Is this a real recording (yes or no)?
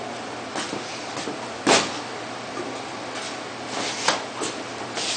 yes